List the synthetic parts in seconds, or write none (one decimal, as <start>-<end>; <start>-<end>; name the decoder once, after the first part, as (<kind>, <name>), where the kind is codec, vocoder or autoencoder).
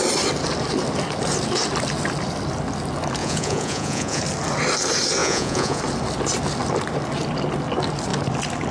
3.2-4.2 (vocoder, Vocos); 5.2-5.8